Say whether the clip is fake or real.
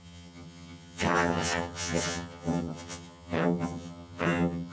fake